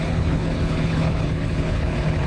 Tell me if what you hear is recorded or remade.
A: remade